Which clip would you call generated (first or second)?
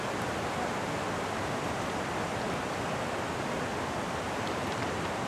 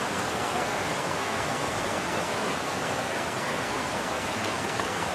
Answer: second